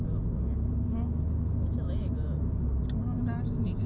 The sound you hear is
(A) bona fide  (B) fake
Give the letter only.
A